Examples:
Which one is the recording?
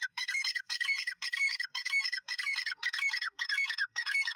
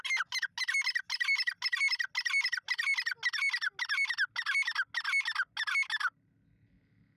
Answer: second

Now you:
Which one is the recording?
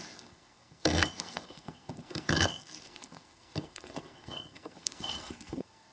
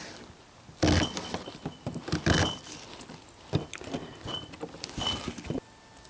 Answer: second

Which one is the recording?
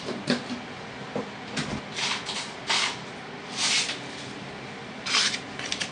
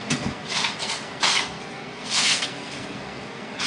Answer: first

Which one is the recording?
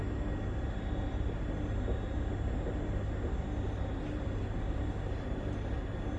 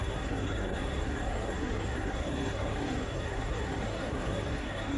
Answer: first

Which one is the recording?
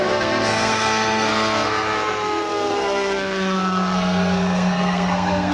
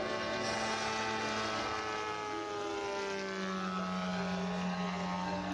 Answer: second